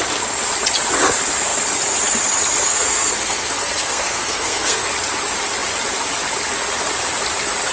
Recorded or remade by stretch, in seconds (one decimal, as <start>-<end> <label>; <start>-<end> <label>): 0.0-2.7 recorded; 2.7-4.9 remade; 4.9-7.7 recorded